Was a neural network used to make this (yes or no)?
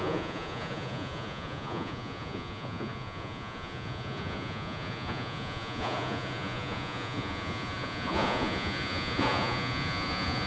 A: yes